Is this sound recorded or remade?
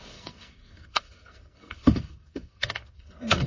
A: remade